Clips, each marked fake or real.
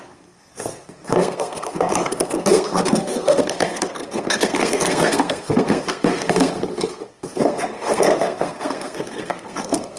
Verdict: fake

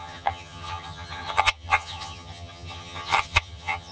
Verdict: fake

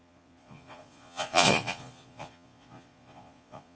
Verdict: fake